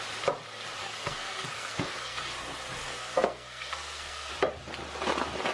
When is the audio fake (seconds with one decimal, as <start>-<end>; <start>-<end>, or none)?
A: 0.8-2.2; 2.8-4.3